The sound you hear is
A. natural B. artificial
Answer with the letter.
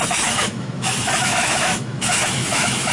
B